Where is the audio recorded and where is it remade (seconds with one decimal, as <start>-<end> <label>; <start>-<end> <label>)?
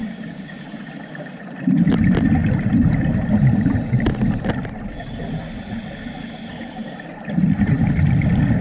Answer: 0.0-0.6 remade; 0.6-8.6 recorded